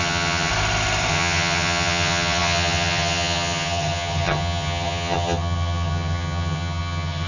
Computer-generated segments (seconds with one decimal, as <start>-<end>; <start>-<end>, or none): 0.0-0.5; 1.1-7.3

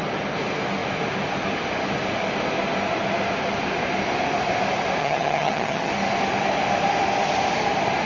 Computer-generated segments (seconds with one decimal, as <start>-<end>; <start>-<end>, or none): 5.0-5.9